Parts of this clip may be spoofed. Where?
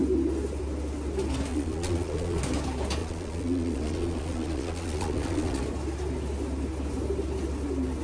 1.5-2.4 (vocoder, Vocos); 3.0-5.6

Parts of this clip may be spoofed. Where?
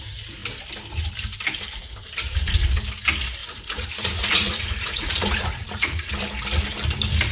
3.4-6.1 (vocoder, Vocos)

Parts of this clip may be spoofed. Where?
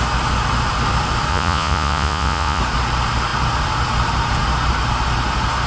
1.3-2.6 (vocoder, Vocos)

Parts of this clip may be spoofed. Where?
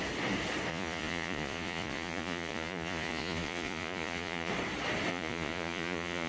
0.7-4.5 (vocoder, Vocos); 5.1-6.3